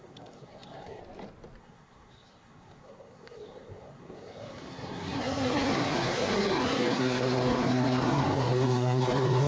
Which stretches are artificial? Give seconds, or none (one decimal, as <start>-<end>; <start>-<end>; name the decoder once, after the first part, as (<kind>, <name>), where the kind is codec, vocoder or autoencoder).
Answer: 0.0-1.0 (codec, SNAC); 1.6-9.5